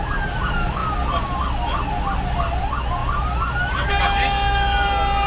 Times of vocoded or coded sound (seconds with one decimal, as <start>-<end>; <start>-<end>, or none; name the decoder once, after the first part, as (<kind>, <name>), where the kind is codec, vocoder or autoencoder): none